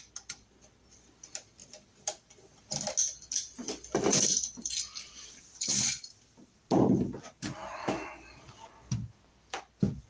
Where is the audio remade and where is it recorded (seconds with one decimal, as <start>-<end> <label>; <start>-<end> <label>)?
0.0-1.6 recorded; 1.6-2.9 remade; 2.9-4.1 recorded; 4.1-5.5 remade; 5.5-10.1 recorded